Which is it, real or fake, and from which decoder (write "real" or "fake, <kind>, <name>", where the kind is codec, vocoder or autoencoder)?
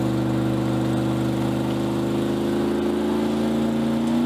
real